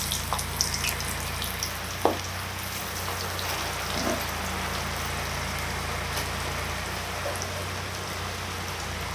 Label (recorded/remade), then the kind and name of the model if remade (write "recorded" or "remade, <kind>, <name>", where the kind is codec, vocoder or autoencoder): recorded